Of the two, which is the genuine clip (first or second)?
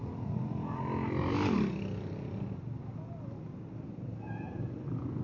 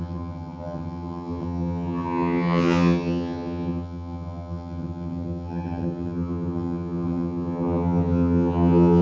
first